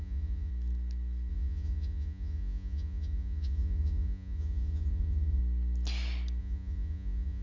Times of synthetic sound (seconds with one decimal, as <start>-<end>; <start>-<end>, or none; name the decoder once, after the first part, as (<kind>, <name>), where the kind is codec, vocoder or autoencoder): 0.0-0.5 (vocoder, Vocos); 1.3-5.4; 6.4-7.4